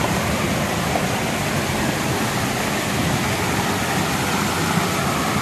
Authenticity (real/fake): real